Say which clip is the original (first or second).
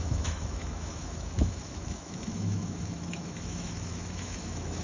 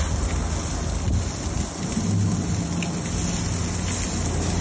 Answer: second